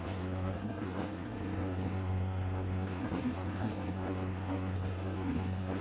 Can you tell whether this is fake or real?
fake